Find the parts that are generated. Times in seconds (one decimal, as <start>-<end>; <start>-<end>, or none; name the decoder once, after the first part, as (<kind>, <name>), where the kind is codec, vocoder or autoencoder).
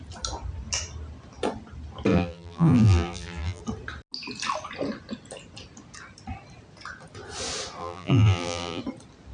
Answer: 2.1-3.6 (vocoder, BigVGAN v2); 7.8-8.8